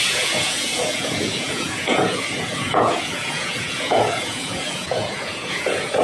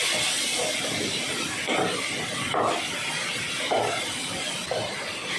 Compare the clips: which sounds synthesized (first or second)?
first